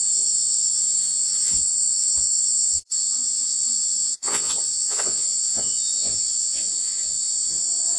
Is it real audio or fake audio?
fake